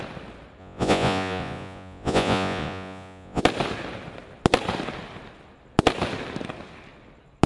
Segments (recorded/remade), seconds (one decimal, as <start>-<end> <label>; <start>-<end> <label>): 0.0-0.6 recorded; 0.6-3.4 remade; 3.4-7.5 recorded